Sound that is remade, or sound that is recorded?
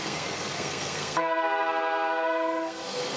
remade